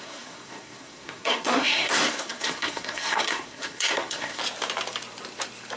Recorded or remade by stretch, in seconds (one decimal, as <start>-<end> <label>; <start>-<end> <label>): 0.0-4.4 remade; 4.4-5.8 recorded

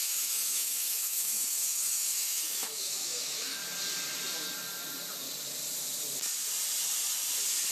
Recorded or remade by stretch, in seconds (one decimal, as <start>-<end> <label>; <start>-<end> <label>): 0.0-3.6 remade; 3.6-7.7 recorded